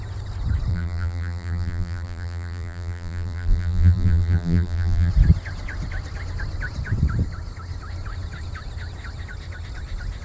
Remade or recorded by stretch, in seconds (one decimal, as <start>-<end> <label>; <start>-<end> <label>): 0.0-0.7 recorded; 0.7-5.1 remade; 5.1-10.2 recorded